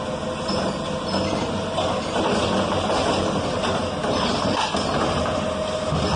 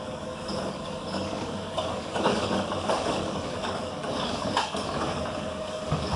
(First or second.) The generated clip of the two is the second